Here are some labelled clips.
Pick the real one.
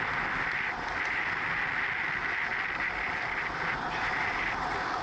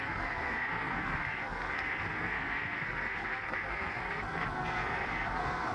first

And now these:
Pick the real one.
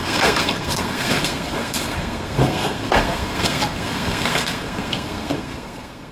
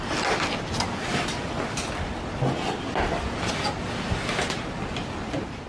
second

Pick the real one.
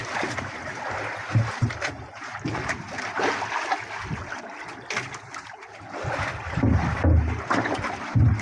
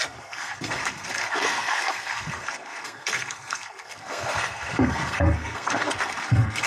first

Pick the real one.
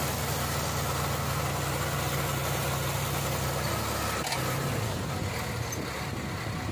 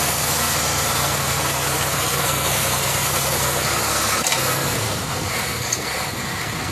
first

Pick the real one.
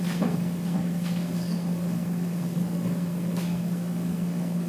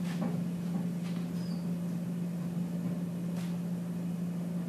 second